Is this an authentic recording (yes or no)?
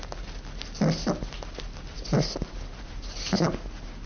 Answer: yes